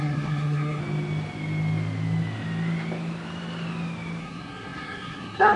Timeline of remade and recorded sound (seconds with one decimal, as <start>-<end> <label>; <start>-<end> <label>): 0.0-0.8 remade; 0.8-4.2 recorded; 4.2-5.6 remade